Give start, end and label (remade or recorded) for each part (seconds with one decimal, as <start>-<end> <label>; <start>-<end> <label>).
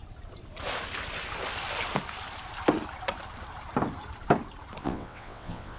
0.0-4.8 recorded; 4.8-5.8 remade